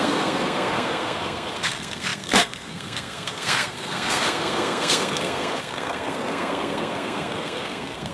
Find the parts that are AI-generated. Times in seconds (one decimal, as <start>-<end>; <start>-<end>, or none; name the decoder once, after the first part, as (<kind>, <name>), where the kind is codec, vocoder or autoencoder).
0.0-8.1 (codec, SNAC)